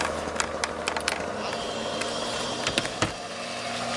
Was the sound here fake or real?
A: real